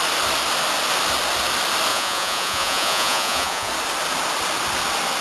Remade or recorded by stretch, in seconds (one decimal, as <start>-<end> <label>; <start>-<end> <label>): 0.0-1.9 recorded; 1.9-3.7 remade; 3.7-5.2 recorded

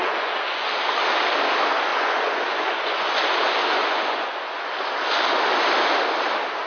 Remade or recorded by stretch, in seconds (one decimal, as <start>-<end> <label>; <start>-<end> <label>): 0.0-0.7 remade; 0.7-1.9 recorded; 1.9-3.2 remade; 3.2-3.7 recorded; 3.7-4.7 remade; 4.7-6.7 recorded

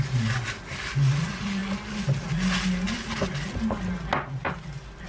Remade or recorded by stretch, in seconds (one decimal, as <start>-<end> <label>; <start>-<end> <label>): 0.0-5.1 recorded

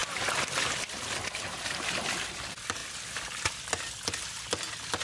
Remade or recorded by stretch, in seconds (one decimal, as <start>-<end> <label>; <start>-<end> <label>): 0.0-5.0 recorded